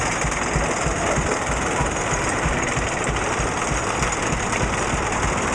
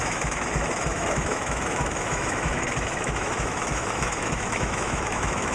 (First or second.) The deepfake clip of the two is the second